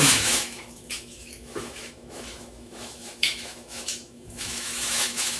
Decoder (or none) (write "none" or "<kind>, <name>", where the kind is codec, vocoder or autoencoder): autoencoder, DAC-VAE